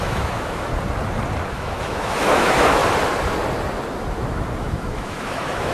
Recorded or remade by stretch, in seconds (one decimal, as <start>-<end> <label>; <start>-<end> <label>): 0.0-0.7 remade; 0.7-1.5 recorded; 1.5-2.8 remade; 2.8-4.6 recorded; 4.6-5.7 remade